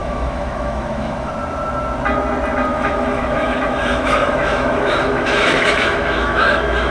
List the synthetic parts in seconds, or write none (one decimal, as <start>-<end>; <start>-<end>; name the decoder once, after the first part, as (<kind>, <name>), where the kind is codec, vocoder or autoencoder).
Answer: 0.0-1.3 (autoencoder, DAC-VAE); 2.7-6.9